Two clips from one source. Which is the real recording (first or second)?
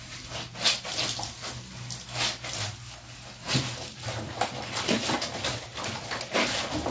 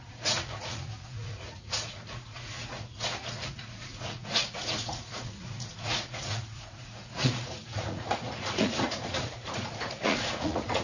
first